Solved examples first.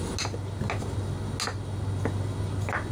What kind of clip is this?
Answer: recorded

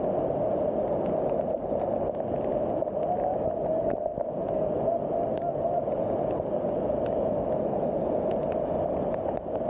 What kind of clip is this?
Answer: recorded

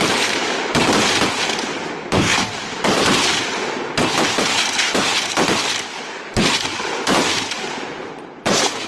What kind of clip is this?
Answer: recorded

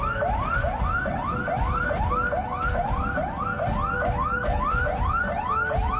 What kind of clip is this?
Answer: recorded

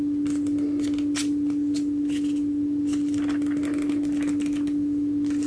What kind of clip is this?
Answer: recorded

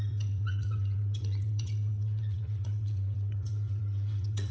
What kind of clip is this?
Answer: remade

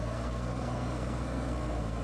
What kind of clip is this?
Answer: remade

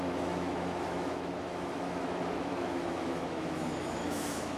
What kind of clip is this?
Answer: remade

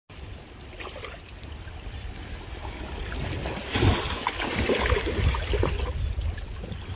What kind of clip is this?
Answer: recorded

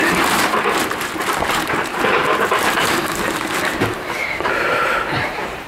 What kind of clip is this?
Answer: remade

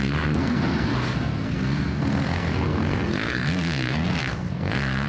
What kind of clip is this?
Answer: remade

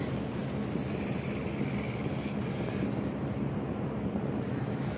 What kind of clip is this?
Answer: recorded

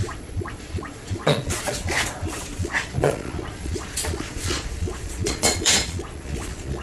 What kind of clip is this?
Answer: remade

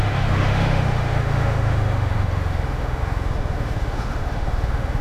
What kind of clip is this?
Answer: remade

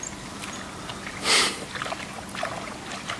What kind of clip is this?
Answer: recorded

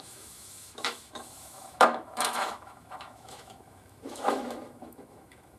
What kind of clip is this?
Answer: remade